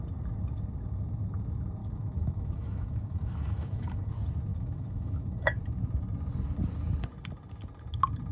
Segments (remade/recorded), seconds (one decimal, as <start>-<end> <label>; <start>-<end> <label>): 0.0-1.8 recorded; 1.8-4.1 remade; 4.1-4.5 recorded; 4.5-5.6 remade; 5.6-8.3 recorded